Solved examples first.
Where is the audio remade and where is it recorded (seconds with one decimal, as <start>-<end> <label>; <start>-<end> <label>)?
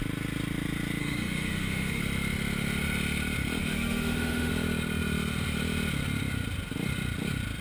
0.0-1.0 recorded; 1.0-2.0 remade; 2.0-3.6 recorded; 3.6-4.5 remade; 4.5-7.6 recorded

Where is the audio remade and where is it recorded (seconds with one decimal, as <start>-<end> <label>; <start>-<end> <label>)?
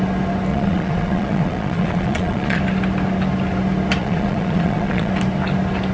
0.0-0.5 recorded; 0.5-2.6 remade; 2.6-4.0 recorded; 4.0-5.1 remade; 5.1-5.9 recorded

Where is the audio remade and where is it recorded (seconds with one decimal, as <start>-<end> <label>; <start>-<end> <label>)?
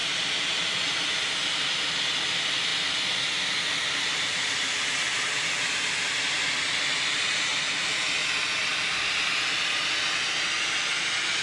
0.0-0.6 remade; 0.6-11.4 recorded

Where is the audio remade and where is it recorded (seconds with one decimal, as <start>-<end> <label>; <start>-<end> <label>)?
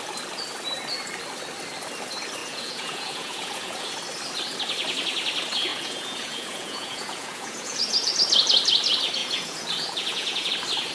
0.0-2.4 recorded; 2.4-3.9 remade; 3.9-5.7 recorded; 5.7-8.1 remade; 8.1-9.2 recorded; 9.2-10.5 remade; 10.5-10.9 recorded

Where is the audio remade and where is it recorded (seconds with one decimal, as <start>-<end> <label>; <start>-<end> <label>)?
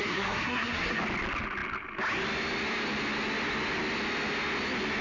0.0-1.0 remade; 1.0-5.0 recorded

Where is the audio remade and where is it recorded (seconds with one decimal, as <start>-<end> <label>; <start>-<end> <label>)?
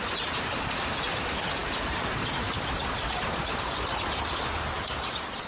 0.0-5.5 remade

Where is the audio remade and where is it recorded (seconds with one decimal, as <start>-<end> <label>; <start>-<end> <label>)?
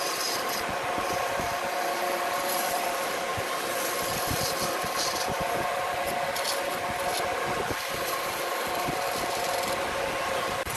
0.0-10.8 recorded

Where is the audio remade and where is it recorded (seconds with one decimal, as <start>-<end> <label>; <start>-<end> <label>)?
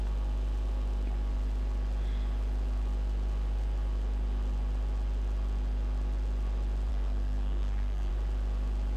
0.0-6.9 recorded; 6.9-8.1 remade; 8.1-9.0 recorded